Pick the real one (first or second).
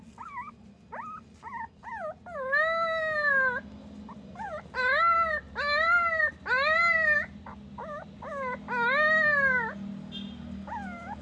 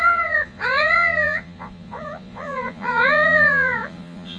first